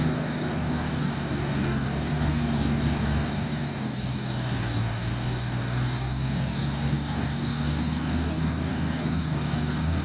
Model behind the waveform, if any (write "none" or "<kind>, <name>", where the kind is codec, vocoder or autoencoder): codec, DAC